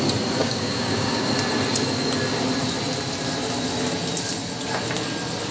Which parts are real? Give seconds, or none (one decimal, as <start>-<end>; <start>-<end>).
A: 0.0-0.4; 1.3-5.5